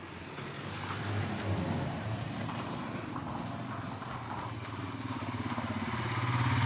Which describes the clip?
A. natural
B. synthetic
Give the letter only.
A